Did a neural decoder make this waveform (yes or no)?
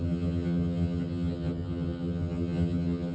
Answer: yes